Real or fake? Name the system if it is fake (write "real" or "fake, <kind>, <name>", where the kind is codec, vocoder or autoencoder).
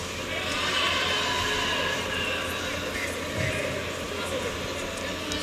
real